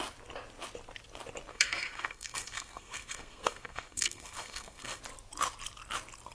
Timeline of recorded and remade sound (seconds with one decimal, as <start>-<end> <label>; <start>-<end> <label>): 0.0-1.5 recorded; 1.5-5.0 remade; 5.0-6.3 recorded